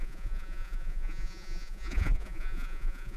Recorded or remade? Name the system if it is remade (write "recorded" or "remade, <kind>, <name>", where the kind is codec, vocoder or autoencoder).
remade, vocoder, Vocos